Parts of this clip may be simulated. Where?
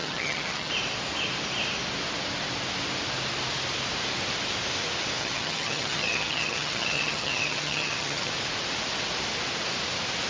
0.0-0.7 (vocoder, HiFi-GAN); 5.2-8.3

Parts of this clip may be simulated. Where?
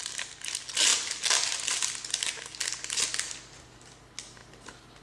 0.9-1.9 (vocoder, BigVGAN v2)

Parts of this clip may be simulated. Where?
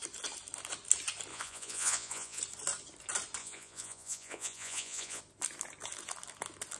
1.3-2.4 (vocoder, Vocos); 3.4-5.2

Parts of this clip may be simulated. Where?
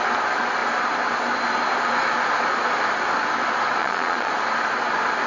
3.8-4.3 (vocoder, Vocos)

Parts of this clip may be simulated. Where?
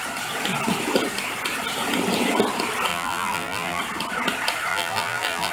2.9-3.8 (vocoder, BigVGAN v2); 4.7-5.5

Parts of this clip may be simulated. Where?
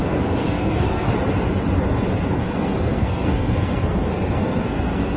0.0-1.1 (codec, SNAC); 2.4-5.2